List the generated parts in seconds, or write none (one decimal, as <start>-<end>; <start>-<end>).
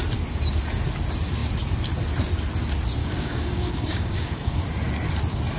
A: 3.0-4.6